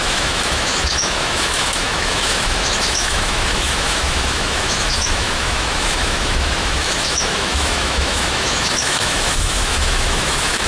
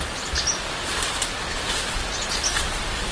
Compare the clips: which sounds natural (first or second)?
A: second